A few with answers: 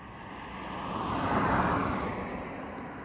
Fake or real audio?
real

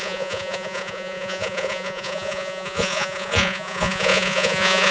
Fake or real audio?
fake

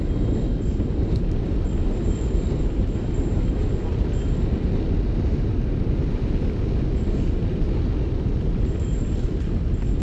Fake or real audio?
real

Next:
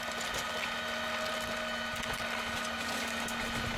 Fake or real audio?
real